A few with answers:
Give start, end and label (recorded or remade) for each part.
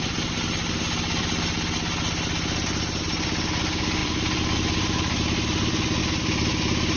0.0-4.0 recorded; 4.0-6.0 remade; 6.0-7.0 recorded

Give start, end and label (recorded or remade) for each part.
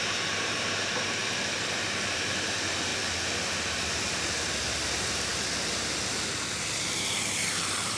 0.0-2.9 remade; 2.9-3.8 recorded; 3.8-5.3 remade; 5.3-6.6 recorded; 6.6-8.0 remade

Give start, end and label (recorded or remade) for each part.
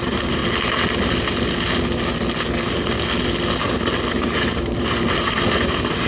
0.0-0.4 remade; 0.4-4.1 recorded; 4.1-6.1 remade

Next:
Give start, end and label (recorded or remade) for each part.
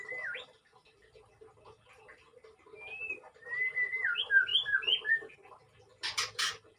0.0-2.3 remade; 2.3-3.5 recorded; 3.5-6.8 remade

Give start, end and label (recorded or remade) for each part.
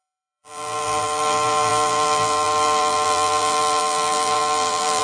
0.0-5.0 remade